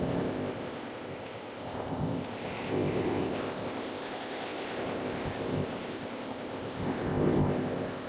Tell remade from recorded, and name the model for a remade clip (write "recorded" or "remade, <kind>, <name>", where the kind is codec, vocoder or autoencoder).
remade, codec, ZipCodec